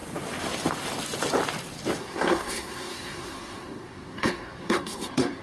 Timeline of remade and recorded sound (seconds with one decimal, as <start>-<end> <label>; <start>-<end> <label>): 0.0-2.0 recorded; 2.0-5.4 remade